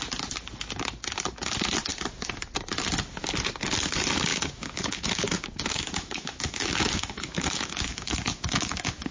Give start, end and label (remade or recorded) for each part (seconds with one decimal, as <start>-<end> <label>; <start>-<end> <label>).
0.0-4.3 recorded; 4.3-9.1 remade